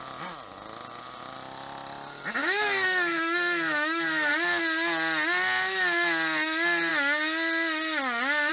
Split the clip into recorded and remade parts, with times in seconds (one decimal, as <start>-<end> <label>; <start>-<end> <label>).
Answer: 0.0-2.4 recorded; 2.4-4.3 remade; 4.3-8.5 recorded